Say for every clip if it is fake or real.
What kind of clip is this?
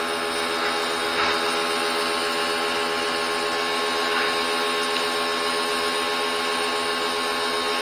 real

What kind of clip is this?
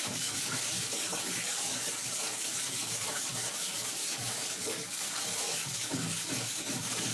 fake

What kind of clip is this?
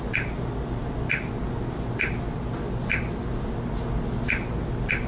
real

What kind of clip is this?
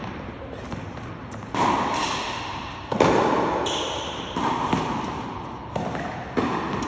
real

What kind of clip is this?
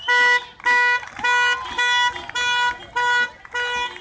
real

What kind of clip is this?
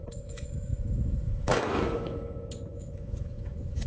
fake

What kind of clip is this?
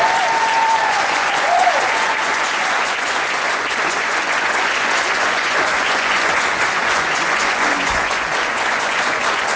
fake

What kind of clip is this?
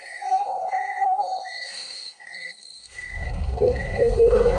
fake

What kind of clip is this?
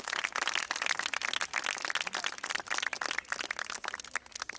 real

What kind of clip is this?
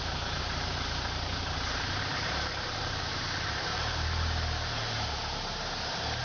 fake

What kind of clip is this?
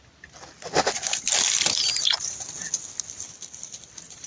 real